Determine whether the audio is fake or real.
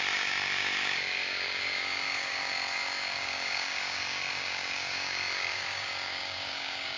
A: fake